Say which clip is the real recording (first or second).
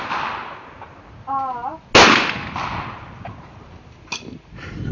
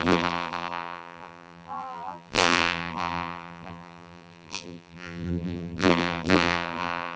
first